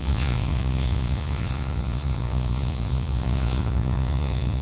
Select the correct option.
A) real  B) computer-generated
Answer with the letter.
B